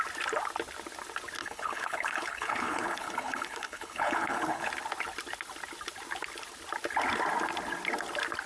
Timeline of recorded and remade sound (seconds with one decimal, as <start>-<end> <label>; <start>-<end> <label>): 0.0-1.4 recorded; 1.4-4.7 remade; 4.7-8.5 recorded